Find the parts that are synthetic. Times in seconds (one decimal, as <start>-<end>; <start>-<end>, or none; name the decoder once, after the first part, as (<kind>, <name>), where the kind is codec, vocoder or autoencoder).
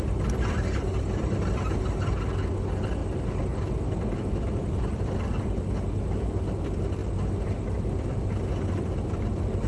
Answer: none